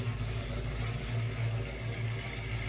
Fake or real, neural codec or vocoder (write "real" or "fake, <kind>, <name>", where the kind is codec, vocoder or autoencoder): real